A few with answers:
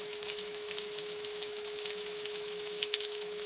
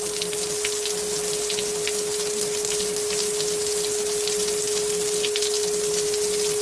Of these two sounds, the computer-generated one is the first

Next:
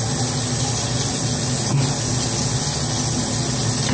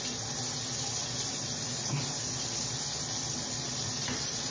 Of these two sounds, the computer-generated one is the second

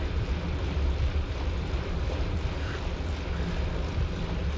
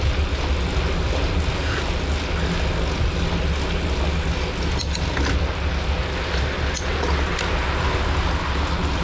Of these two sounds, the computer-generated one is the first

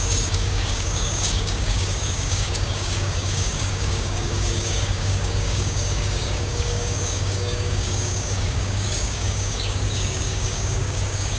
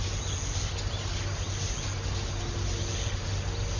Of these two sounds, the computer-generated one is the first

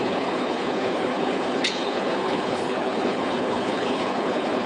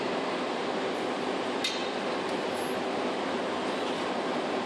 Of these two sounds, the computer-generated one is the first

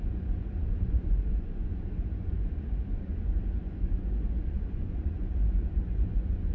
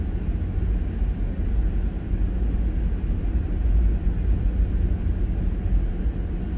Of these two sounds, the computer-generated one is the first